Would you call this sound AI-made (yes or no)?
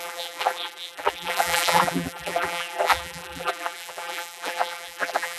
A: yes